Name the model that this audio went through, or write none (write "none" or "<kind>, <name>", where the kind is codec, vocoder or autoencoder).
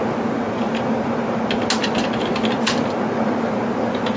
none